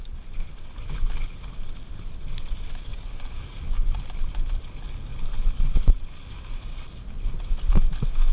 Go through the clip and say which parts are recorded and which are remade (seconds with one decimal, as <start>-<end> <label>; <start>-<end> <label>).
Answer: 0.0-8.3 recorded